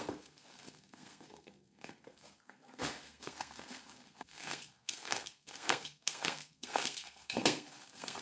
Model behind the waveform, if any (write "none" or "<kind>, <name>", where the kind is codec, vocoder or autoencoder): codec, SNAC